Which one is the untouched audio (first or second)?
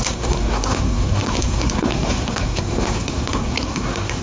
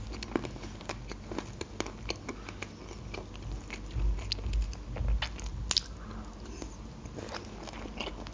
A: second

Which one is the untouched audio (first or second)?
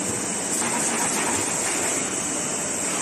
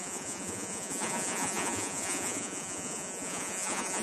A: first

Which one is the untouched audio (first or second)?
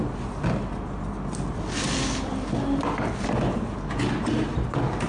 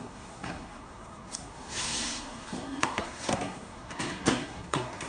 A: first